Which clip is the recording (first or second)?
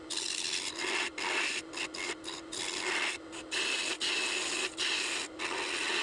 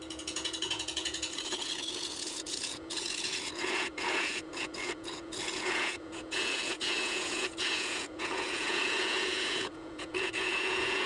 first